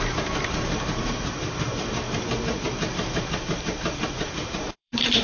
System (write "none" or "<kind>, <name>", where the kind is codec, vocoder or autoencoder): vocoder, BigVGAN v2